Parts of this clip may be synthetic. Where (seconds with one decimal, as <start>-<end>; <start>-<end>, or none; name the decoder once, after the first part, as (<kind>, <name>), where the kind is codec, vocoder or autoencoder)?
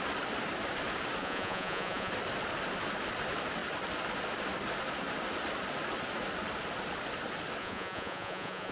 1.2-2.1 (vocoder, Vocos); 7.6-8.7